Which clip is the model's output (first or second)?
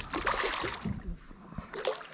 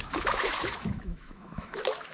second